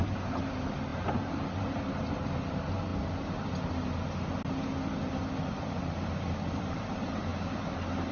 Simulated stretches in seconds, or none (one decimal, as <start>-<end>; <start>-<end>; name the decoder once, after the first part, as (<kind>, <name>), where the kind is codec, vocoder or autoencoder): 0.0-2.9 (vocoder, BigVGAN v2); 5.7-7.3